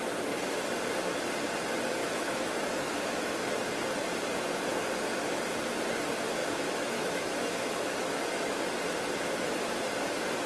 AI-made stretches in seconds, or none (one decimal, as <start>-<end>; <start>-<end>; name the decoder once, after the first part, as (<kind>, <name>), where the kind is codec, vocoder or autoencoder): 2.0-3.5 (autoencoder, DAC-VAE); 6.4-8.6